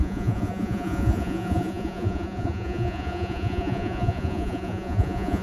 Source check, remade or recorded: remade